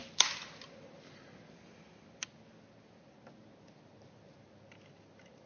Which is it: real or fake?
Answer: real